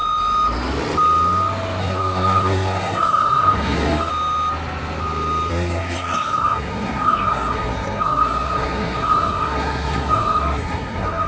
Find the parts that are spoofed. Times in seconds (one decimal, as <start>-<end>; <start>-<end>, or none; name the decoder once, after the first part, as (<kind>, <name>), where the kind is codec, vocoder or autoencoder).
1.8-4.1 (codec, SNAC); 5.5-11.3